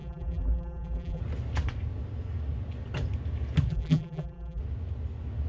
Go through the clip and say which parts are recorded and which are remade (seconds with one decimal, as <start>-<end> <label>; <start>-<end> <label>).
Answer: 0.0-1.2 remade; 1.2-3.7 recorded; 3.7-4.6 remade; 4.6-5.5 recorded